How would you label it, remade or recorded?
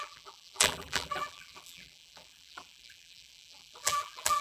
remade